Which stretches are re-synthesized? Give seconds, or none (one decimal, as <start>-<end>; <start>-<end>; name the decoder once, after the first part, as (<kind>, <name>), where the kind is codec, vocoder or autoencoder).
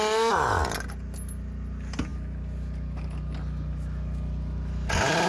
none